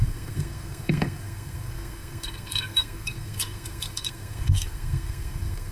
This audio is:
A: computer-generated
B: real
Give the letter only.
A